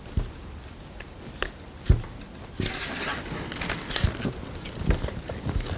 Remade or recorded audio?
recorded